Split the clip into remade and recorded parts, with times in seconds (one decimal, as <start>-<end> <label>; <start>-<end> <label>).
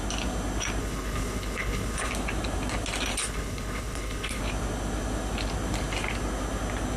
0.0-0.8 recorded; 0.8-2.1 remade; 2.1-3.2 recorded; 3.2-4.4 remade; 4.4-7.0 recorded